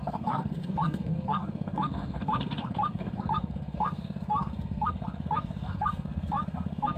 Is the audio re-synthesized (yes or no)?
yes